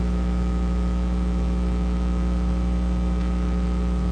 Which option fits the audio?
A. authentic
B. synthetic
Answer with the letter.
B